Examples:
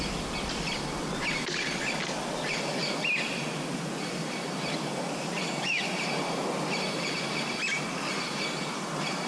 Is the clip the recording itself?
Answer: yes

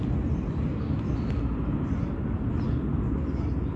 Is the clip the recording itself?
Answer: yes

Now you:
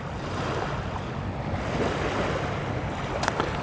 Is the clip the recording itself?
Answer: yes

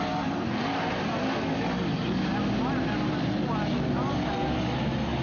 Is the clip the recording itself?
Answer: yes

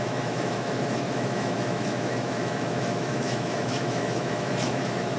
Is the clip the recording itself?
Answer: no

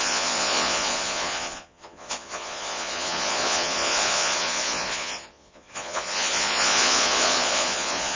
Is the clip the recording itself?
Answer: no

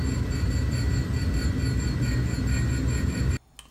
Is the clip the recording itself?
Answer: yes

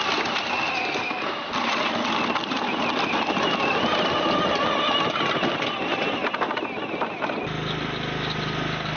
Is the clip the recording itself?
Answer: yes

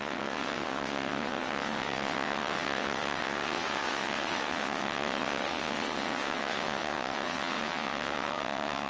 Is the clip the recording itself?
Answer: no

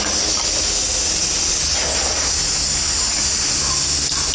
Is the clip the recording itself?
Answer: yes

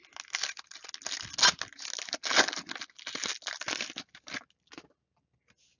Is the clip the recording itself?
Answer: yes